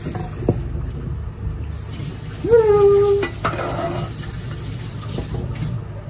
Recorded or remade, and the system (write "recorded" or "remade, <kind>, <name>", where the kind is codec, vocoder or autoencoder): recorded